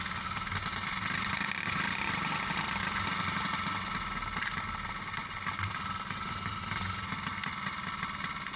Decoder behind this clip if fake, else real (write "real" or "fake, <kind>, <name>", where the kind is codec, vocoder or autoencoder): real